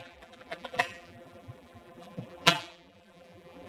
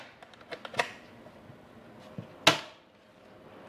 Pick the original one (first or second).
second